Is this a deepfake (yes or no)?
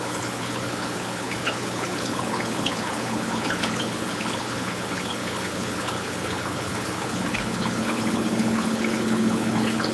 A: yes